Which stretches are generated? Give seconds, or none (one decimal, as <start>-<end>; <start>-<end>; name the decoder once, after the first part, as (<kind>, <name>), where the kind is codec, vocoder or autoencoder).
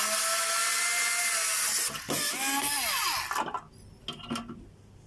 none